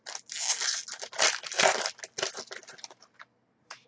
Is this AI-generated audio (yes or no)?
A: no